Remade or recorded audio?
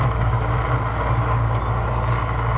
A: recorded